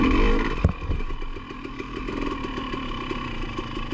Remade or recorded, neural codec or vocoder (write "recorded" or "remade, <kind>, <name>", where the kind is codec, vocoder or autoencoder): recorded